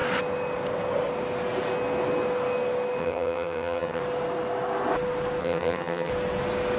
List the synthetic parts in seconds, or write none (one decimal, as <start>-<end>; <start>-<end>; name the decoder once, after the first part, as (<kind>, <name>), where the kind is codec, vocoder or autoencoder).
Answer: 3.0-4.0 (vocoder, HiFi-GAN); 5.4-6.1